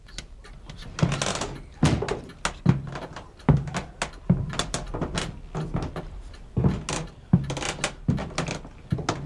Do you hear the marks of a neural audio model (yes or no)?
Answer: no